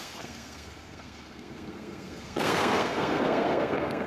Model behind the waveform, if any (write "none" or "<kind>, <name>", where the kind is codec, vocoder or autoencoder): codec, SNAC